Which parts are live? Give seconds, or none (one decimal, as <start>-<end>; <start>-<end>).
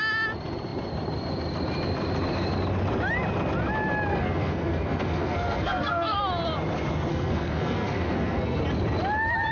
0.0-4.1; 6.2-7.1; 8.6-9.5